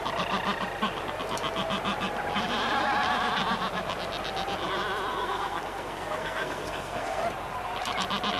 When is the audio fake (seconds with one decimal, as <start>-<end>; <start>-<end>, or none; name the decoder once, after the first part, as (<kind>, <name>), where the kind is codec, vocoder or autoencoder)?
5.1-7.2 (codec, SNAC)